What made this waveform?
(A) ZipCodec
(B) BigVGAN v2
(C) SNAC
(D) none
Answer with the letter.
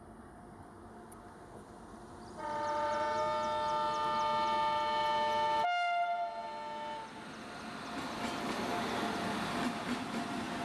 D